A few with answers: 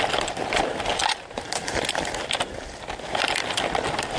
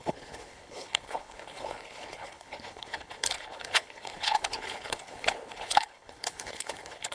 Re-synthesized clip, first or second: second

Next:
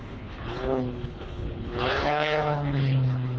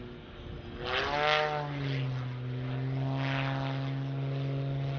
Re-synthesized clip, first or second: first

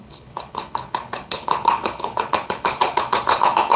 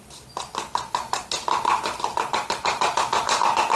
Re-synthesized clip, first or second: first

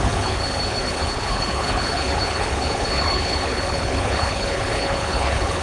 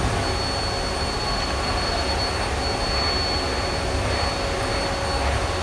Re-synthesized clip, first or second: first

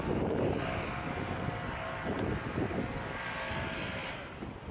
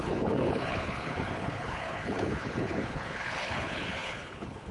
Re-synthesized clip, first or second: second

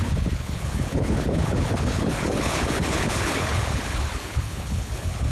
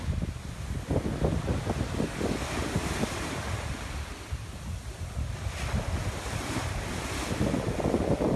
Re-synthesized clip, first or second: first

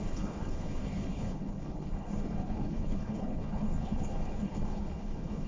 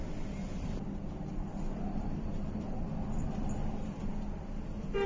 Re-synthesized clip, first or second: first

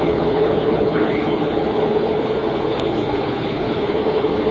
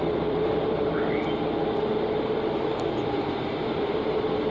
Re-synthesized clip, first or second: first